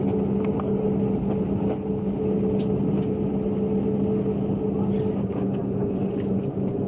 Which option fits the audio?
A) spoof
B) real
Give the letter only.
B